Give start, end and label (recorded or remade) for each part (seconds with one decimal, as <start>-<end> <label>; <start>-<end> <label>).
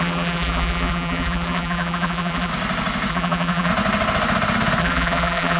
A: 0.0-2.5 remade; 2.5-3.1 recorded; 3.1-3.7 remade; 3.7-4.8 recorded; 4.8-5.6 remade